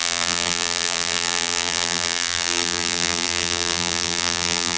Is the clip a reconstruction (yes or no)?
yes